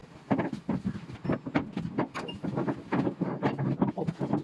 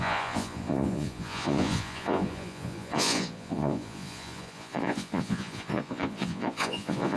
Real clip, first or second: first